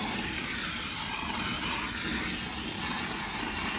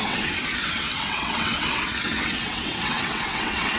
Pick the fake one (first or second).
second